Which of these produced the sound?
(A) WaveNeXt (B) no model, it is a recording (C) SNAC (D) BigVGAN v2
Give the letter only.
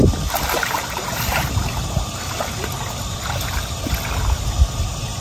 B